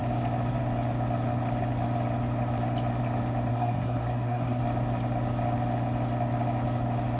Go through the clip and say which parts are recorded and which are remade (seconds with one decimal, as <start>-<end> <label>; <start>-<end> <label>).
0.0-3.5 recorded; 3.5-4.6 remade; 4.6-7.2 recorded